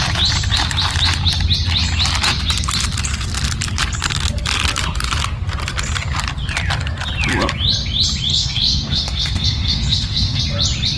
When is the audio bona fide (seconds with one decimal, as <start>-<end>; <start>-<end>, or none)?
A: 0.0-8.3; 10.4-11.0